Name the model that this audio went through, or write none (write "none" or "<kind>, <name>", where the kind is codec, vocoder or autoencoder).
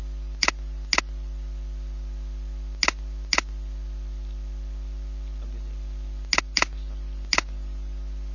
none